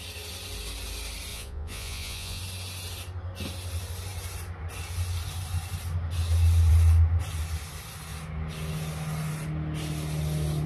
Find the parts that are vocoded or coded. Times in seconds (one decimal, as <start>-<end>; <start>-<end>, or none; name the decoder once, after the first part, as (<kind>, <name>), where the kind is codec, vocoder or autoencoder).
1.3-2.4 (vocoder, Vocos)